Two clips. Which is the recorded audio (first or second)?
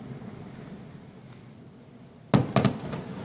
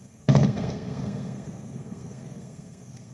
first